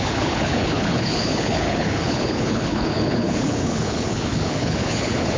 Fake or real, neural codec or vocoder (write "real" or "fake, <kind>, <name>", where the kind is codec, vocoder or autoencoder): fake, codec, HILCodec